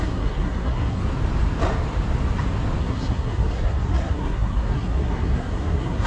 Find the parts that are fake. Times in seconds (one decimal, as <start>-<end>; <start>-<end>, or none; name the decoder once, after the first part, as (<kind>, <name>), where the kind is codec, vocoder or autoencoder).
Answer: 0.0-1.0 (codec, SNAC); 2.8-6.1